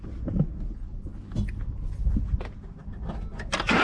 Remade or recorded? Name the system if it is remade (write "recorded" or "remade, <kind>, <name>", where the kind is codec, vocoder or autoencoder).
recorded